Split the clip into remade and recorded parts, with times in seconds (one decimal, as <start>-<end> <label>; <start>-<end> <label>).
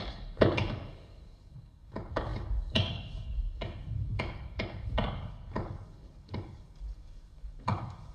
0.0-8.1 remade